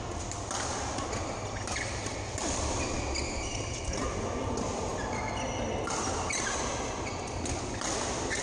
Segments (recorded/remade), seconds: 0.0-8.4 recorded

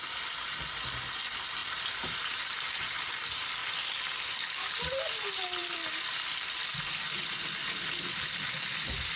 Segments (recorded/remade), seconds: 0.0-1.6 recorded; 1.6-2.8 remade; 2.8-5.6 recorded; 5.6-7.0 remade; 7.0-9.2 recorded

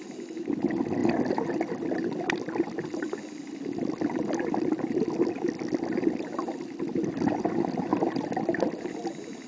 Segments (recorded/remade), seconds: 0.0-1.0 recorded; 1.0-5.8 remade; 5.8-9.5 recorded

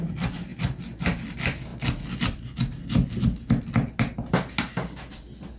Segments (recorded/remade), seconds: 0.0-5.6 recorded

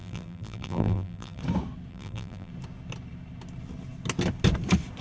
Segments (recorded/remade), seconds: 0.0-1.4 remade; 1.4-1.9 recorded; 1.9-2.5 remade; 2.5-5.0 recorded

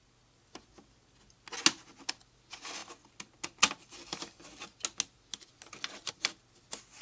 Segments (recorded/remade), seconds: 0.0-7.0 recorded

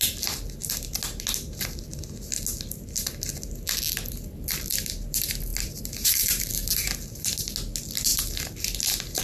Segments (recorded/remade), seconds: 0.0-5.5 recorded; 5.5-6.5 remade; 6.5-9.2 recorded

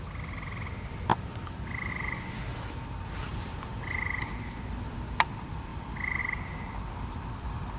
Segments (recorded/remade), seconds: 0.0-3.3 recorded; 3.3-4.2 remade; 4.2-5.7 recorded; 5.7-6.2 remade; 6.2-7.8 recorded